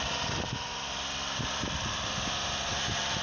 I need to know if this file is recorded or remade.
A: recorded